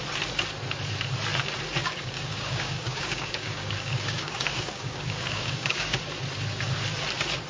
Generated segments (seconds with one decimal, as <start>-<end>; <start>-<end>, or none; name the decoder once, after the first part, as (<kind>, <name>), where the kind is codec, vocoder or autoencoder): 1.8-6.0 (codec, DAC)